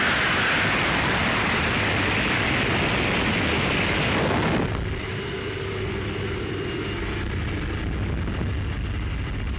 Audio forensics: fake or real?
real